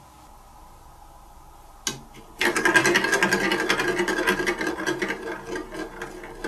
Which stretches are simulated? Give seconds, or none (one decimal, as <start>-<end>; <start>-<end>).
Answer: none